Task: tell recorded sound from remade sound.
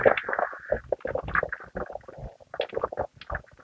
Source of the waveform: recorded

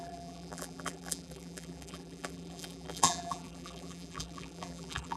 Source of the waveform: remade